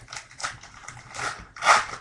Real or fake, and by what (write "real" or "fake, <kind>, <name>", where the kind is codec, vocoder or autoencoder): real